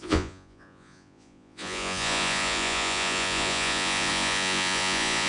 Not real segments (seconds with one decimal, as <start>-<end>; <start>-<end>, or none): 0.0-5.3